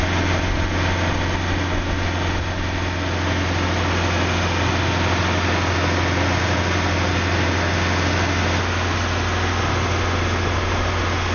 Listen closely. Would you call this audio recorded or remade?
recorded